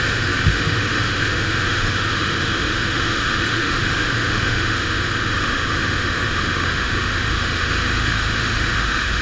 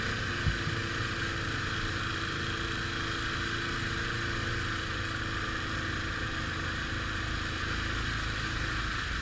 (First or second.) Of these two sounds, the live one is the second